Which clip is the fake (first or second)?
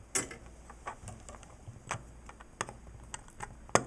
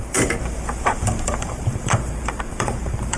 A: second